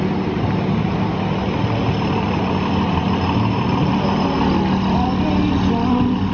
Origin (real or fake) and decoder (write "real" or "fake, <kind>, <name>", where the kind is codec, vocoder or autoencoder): real